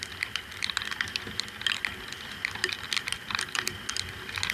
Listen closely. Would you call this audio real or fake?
real